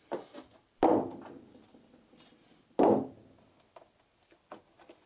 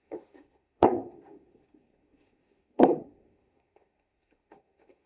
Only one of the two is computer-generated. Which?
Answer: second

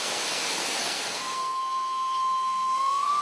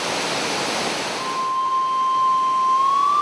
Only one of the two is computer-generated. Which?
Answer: first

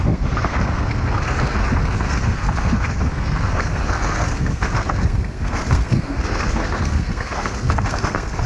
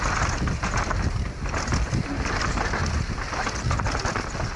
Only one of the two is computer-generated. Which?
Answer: first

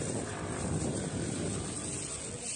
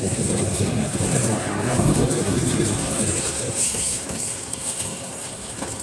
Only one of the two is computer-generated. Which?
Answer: second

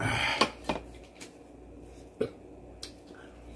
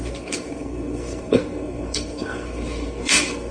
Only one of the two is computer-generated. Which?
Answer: second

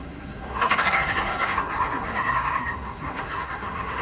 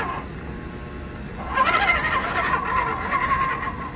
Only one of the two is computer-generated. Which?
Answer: first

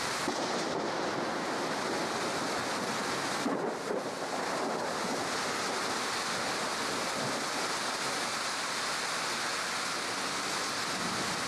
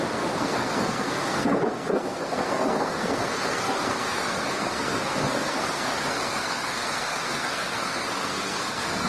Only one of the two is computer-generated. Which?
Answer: second